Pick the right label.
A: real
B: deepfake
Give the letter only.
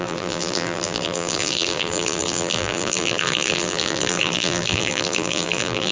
B